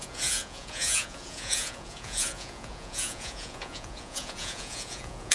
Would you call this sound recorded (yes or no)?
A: no